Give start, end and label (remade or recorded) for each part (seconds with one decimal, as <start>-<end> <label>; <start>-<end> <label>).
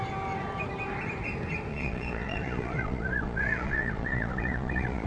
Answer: 0.0-1.7 recorded; 1.7-5.1 remade